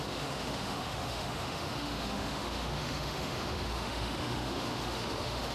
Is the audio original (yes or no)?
no